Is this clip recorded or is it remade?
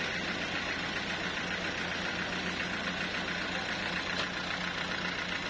recorded